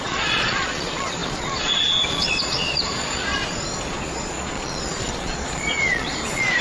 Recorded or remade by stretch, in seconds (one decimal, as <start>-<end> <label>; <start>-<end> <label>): 0.0-3.4 remade; 3.4-3.9 recorded; 3.9-6.6 remade

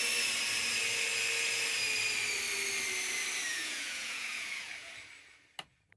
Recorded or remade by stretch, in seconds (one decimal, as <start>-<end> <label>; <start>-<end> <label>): 0.0-3.5 recorded; 3.5-4.9 remade; 4.9-6.0 recorded

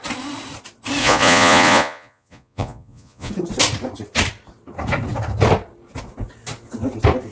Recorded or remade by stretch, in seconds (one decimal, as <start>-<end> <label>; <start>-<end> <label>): 0.0-1.0 recorded; 1.0-3.3 remade; 3.3-7.3 recorded

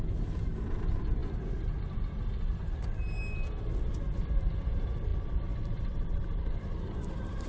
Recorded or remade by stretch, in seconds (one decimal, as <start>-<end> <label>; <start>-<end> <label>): 0.0-7.5 recorded

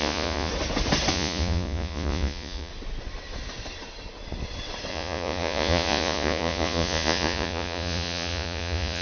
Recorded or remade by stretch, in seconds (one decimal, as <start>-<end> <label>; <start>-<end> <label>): 0.0-0.5 remade; 0.5-1.1 recorded; 1.1-2.7 remade; 2.7-4.9 recorded; 4.9-9.0 remade

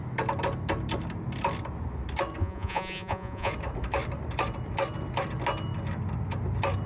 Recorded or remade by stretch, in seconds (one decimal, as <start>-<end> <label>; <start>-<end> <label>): 0.0-2.4 recorded; 2.4-3.5 remade; 3.5-6.9 recorded